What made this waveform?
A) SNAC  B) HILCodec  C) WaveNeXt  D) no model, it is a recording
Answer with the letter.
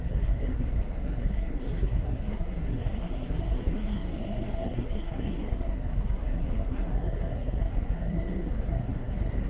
A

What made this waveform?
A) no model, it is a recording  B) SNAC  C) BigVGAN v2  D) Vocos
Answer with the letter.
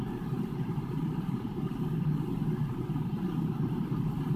C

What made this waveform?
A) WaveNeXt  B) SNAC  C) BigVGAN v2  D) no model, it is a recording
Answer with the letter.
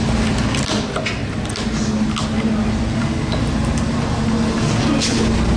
D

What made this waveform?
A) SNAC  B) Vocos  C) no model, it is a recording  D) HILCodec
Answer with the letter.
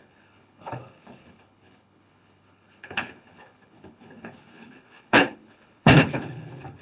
D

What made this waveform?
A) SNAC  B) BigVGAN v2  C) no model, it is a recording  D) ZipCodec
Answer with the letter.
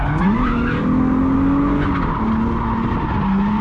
C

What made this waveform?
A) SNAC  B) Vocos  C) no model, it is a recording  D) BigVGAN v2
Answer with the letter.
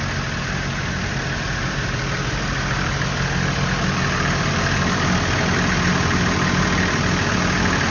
C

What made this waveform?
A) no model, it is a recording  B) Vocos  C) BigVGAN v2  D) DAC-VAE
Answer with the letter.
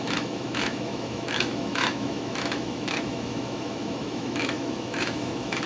D